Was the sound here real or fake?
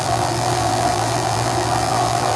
fake